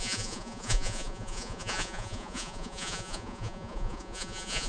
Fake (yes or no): yes